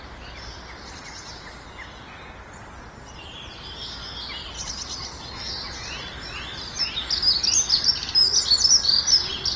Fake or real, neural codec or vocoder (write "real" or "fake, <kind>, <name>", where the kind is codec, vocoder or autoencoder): real